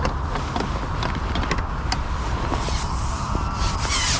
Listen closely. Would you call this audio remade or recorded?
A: recorded